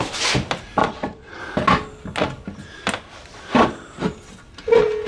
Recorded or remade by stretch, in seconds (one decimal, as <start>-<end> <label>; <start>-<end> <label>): 0.0-0.8 recorded; 0.8-1.4 remade; 1.4-5.1 recorded